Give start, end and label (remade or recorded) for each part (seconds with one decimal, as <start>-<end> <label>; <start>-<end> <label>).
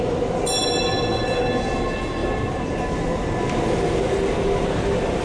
0.0-2.2 recorded; 2.2-2.8 remade; 2.8-5.2 recorded